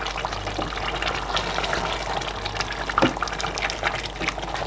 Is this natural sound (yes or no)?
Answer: yes